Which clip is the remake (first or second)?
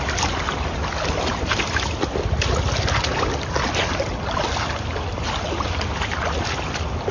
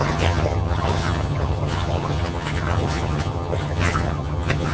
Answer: second